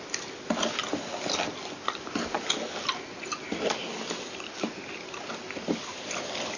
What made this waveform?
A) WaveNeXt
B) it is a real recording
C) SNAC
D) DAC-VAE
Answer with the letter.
B